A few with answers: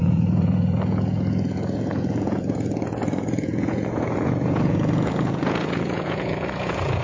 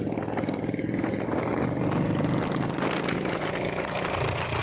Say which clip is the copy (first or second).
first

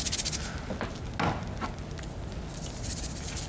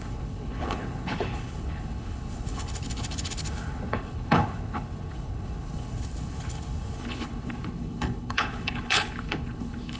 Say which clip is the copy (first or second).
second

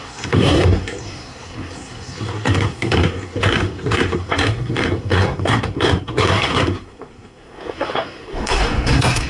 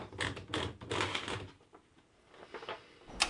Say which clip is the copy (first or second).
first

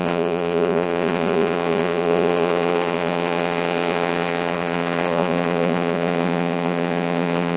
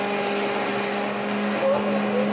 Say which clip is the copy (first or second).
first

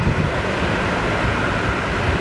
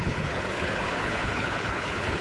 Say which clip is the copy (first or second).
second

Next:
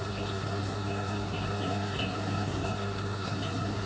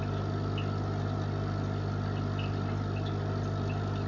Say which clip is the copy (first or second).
first